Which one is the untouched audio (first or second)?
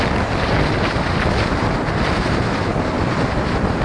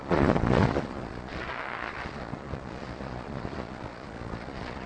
first